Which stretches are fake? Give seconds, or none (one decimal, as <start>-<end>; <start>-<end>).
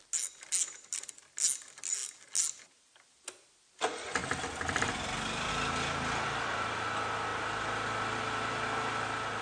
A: none